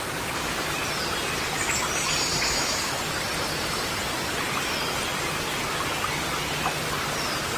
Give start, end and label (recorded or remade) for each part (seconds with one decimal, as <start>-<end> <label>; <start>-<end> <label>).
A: 0.0-2.3 recorded; 2.3-2.8 remade; 2.8-7.6 recorded